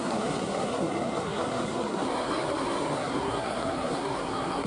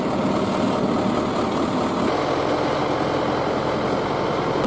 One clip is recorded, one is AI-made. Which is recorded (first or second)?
second